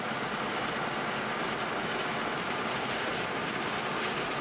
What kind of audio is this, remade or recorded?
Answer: recorded